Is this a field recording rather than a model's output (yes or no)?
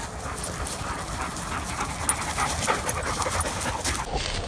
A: yes